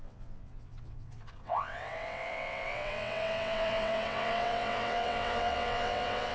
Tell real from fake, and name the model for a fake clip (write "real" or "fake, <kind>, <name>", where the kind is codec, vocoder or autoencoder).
fake, vocoder, WaveNeXt